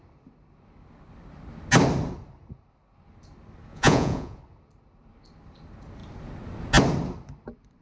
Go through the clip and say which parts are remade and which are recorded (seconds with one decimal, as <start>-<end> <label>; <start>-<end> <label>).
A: 0.0-3.7 recorded; 3.7-4.4 remade; 4.4-7.8 recorded